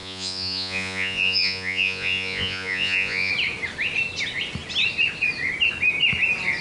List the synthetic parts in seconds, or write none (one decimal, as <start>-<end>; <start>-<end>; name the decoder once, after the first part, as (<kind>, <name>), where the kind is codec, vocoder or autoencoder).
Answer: 0.0-3.3 (vocoder, Vocos)